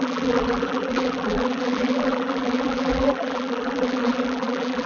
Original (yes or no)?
no